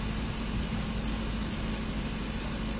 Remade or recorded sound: recorded